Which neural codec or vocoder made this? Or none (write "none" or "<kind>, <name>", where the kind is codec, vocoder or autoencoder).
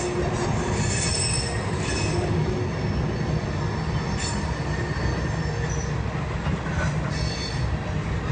none